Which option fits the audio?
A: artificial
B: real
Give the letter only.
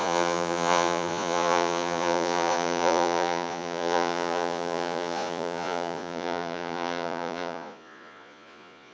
A